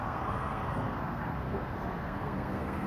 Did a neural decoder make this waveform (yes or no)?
yes